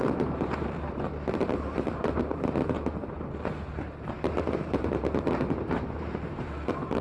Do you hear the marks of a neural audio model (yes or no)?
yes